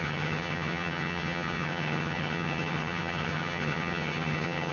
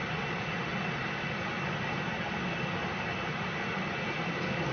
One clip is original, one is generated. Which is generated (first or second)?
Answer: first